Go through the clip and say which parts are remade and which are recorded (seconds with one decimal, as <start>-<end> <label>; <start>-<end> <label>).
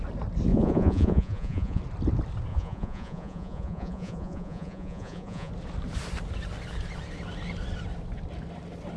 0.0-0.5 recorded; 0.5-1.8 remade; 1.8-2.5 recorded; 2.5-5.5 remade; 5.5-9.0 recorded